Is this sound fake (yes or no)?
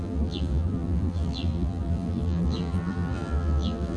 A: yes